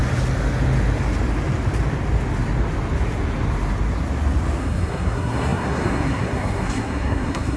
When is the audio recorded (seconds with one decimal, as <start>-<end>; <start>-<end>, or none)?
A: 0.0-4.6